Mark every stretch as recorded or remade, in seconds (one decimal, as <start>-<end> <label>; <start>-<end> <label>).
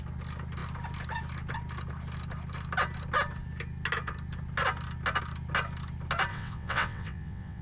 0.0-6.3 recorded; 6.3-7.6 remade